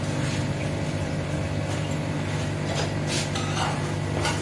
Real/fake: real